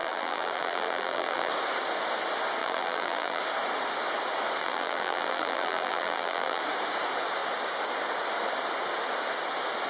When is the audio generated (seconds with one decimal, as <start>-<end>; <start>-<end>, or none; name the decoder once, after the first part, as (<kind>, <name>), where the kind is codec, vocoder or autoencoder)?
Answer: 0.0-1.5 (vocoder, BigVGAN v2); 2.6-3.4; 4.6-6.6

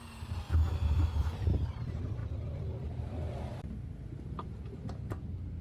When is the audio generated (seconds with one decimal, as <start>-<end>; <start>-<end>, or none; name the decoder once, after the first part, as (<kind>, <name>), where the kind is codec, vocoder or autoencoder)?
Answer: none

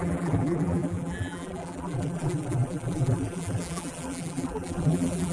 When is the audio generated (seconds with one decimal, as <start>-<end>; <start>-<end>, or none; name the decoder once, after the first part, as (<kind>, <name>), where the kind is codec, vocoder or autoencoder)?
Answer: 0.0-5.3 (vocoder, BigVGAN v2)

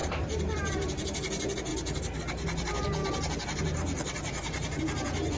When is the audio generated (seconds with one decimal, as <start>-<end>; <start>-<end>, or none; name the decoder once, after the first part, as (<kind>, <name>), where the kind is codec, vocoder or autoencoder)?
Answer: 0.0-0.7 (vocoder, BigVGAN v2); 3.0-4.8

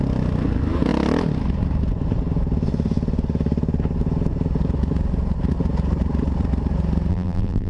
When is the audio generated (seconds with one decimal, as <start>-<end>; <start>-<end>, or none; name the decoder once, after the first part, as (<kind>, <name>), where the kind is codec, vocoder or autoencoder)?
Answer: 7.1-7.7 (vocoder, BigVGAN v2)

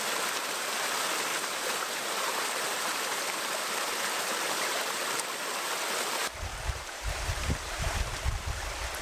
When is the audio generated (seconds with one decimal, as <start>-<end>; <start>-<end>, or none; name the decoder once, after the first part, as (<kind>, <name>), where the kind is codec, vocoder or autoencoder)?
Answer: 1.3-5.7 (vocoder, BigVGAN v2); 6.5-8.6

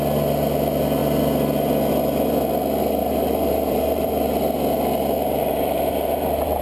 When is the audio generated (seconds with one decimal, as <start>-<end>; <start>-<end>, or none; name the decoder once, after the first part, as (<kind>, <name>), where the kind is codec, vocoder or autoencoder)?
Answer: 3.0-4.1 (vocoder, BigVGAN v2); 5.0-6.6

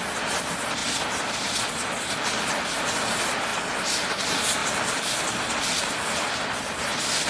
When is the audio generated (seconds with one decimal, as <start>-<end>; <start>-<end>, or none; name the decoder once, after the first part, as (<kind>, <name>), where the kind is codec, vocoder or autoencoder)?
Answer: 0.0-0.8 (vocoder, BigVGAN v2); 1.7-3.5; 4.1-4.6; 5.9-7.3